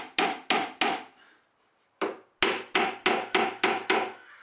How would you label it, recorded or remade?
recorded